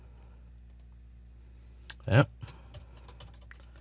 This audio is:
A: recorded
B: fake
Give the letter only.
A